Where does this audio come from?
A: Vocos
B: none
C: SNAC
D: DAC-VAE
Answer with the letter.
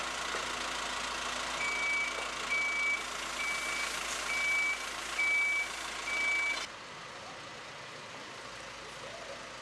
B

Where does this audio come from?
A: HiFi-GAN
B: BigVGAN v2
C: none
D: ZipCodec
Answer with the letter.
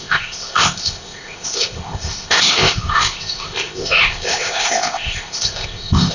D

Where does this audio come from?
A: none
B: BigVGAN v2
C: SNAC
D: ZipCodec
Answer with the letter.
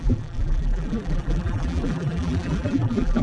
B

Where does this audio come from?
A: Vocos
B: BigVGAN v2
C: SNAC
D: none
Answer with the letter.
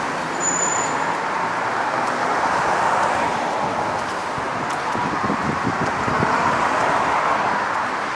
D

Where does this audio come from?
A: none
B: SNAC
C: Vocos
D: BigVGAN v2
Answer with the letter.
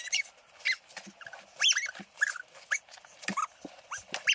A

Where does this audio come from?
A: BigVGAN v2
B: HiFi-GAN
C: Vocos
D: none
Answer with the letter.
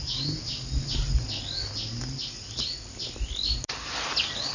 D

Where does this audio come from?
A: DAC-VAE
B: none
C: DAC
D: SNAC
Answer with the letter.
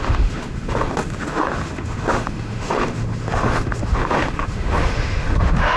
A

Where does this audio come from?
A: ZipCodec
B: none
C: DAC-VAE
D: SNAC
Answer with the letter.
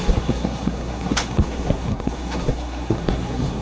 D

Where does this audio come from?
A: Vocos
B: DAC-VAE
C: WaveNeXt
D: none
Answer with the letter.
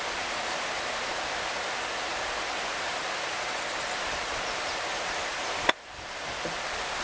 D